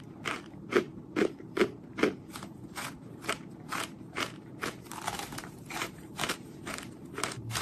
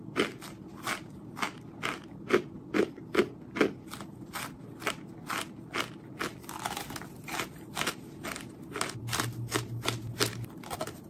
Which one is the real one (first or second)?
second